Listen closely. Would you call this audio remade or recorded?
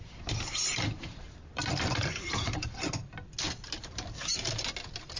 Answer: recorded